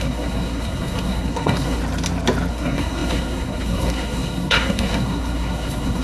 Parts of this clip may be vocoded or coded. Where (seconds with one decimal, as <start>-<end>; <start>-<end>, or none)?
0.0-1.8; 2.5-6.0